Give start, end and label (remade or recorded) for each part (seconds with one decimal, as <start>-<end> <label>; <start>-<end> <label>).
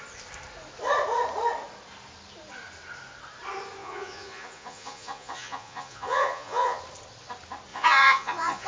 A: 0.0-3.8 recorded; 3.8-6.8 remade; 6.8-7.7 recorded; 7.7-8.7 remade